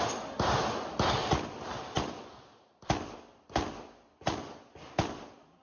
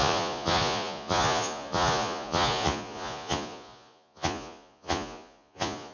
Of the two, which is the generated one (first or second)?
second